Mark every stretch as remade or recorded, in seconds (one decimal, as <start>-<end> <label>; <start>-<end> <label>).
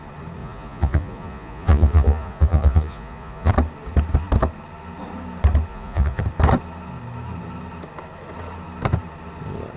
0.0-0.4 recorded; 0.4-3.5 remade; 3.5-5.7 recorded; 5.7-6.2 remade; 6.2-9.8 recorded